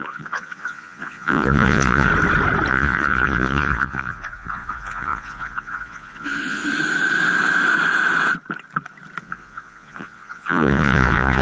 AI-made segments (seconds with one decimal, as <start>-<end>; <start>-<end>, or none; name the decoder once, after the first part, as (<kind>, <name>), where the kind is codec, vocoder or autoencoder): 0.0-2.1 (vocoder, Vocos); 2.7-6.6; 9.2-11.4